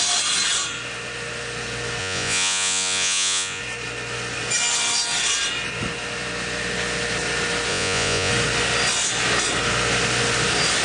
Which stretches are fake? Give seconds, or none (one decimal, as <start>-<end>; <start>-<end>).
2.0-3.6; 7.7-8.3